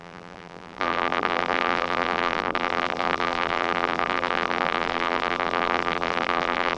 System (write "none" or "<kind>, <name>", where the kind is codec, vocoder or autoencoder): vocoder, BigVGAN v2